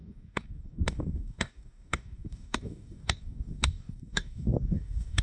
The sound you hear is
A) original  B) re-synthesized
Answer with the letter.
B